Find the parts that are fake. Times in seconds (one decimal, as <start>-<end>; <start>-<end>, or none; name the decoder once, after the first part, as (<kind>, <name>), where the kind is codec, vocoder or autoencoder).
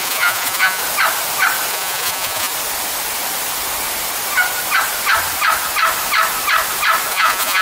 0.0-0.8 (vocoder, Vocos); 1.7-2.5; 7.1-7.6